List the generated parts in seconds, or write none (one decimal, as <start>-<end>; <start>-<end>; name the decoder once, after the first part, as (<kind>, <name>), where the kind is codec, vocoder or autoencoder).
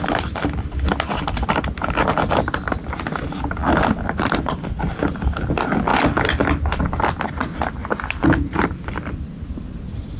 none